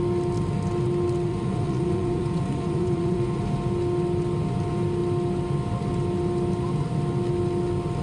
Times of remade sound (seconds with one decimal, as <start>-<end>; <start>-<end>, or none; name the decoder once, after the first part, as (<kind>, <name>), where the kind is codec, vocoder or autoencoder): 1.3-3.4 (vocoder, Vocos)